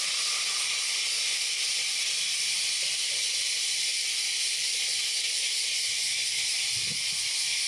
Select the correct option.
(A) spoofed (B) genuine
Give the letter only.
B